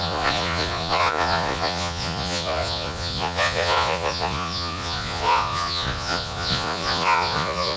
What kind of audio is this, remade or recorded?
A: remade